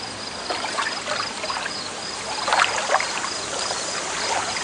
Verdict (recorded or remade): recorded